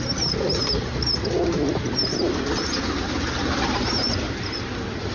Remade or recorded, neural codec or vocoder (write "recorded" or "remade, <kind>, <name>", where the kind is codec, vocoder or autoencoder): recorded